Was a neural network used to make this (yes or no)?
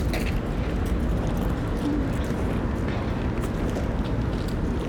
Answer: no